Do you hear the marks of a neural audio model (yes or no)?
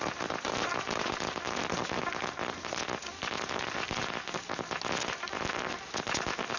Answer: no